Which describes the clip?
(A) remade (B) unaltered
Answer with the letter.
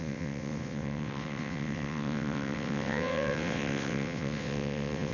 A